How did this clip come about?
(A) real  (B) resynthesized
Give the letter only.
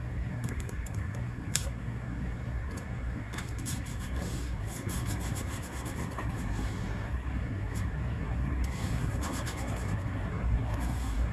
B